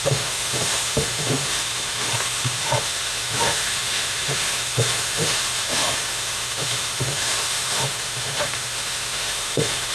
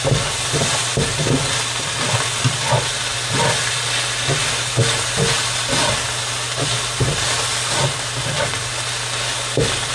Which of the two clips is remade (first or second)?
first